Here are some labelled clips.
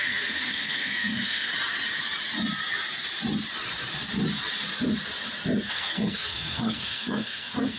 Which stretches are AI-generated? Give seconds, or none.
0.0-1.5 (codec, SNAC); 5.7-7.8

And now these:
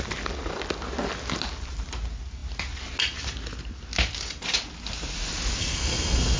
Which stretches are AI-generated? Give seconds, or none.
5.6-6.4 (codec, SNAC)

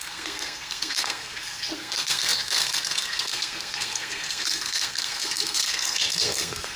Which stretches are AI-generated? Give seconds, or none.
0.0-6.8 (codec, SNAC)

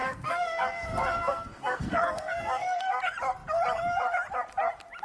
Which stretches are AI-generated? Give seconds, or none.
0.0-3.0 (codec, SNAC)